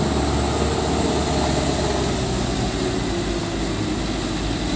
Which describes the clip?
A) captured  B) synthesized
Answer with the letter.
A